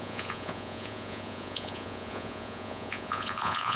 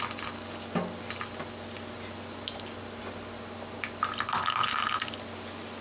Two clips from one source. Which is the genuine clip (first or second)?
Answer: second